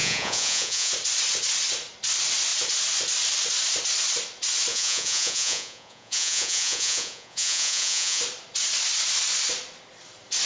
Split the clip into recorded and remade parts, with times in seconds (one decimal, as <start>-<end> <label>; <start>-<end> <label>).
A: 0.0-0.9 remade; 0.9-4.7 recorded; 4.7-8.2 remade; 8.2-10.5 recorded